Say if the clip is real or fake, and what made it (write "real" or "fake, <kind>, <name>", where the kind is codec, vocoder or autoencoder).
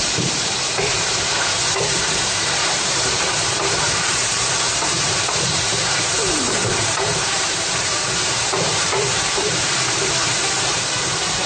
fake, vocoder, BigVGAN v2